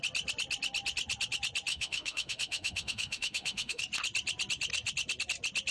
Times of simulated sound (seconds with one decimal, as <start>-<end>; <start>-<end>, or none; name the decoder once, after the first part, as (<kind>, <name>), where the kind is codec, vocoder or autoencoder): 1.7-3.8 (autoencoder, DAC-VAE)